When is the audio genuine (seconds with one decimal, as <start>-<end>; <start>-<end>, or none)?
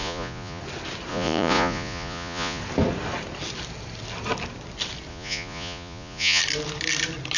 0.6-1.1; 2.6-5.1; 6.4-7.4